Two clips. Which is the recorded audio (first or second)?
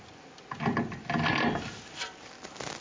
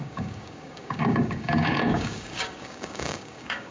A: first